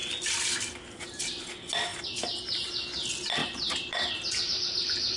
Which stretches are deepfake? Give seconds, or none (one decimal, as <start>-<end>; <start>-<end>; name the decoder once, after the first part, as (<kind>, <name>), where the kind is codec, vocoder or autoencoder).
1.9-2.8 (vocoder, BigVGAN v2); 3.4-5.2